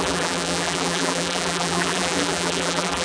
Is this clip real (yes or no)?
no